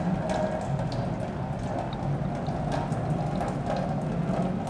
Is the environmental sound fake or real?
real